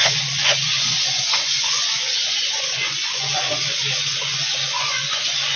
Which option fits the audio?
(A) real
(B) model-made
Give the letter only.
B